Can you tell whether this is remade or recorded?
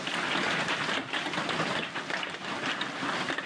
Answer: recorded